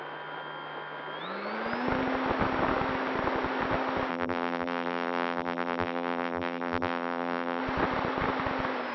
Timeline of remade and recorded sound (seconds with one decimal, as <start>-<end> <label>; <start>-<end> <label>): 0.0-4.1 recorded; 4.1-7.6 remade; 7.6-8.9 recorded